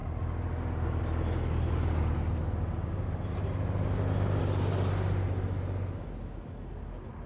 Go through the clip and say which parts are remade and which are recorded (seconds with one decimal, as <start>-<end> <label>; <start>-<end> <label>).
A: 0.0-7.3 recorded